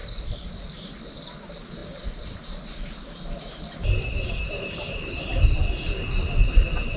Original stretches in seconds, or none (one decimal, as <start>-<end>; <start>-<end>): 0.0-7.0